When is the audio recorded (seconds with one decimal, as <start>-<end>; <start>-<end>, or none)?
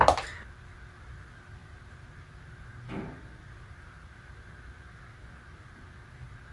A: 0.0-6.5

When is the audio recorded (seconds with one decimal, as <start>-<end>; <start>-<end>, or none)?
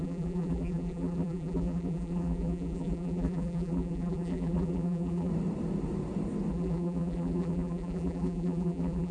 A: 5.3-6.5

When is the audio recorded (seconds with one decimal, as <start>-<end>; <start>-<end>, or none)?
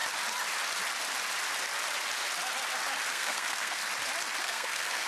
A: 0.0-3.1; 3.8-4.4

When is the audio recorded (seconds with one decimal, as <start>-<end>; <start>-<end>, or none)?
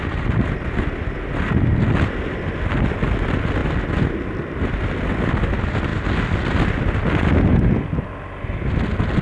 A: 0.0-9.2